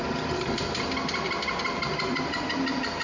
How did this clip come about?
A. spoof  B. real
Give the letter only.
B